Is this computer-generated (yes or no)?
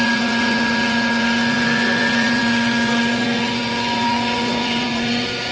yes